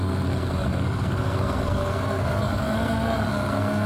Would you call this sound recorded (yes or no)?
no